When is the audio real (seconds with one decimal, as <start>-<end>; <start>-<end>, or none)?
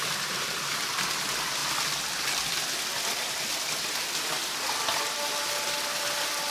0.0-6.5